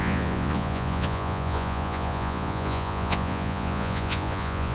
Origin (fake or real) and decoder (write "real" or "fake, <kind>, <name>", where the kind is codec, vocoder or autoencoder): fake, vocoder, Vocos